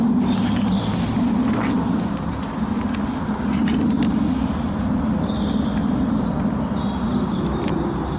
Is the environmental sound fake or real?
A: real